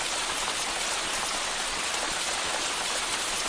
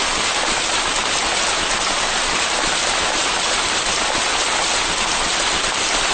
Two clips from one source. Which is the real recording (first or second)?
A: second